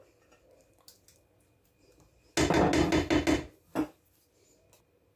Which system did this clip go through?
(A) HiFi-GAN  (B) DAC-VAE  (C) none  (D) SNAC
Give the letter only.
C